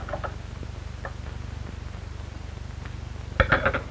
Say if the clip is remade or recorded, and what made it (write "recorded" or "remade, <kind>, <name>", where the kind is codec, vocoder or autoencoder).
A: recorded